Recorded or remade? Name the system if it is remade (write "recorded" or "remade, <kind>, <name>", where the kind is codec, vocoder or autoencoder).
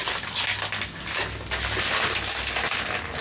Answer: recorded